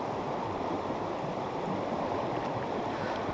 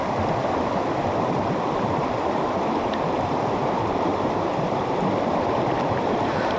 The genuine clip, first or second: first